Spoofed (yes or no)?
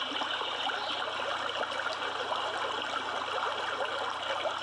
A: no